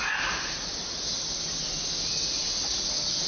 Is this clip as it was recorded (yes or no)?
yes